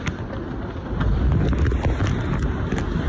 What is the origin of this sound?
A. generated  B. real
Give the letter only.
B